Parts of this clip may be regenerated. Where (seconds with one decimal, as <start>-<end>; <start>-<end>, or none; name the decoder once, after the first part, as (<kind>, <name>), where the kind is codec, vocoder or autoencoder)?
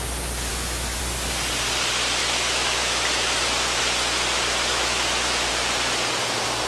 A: 0.5-1.0 (autoencoder, DAC-VAE); 2.2-3.8; 4.7-5.5